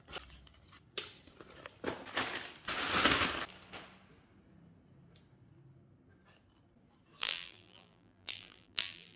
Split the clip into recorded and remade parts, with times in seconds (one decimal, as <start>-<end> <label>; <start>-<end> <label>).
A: 0.0-7.2 recorded; 7.2-9.2 remade